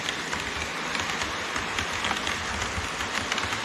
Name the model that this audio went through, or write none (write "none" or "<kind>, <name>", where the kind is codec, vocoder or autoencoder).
none